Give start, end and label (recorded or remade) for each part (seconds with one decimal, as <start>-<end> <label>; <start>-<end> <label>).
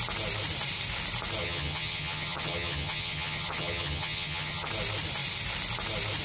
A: 0.0-1.4 recorded; 1.4-4.7 remade; 4.7-6.2 recorded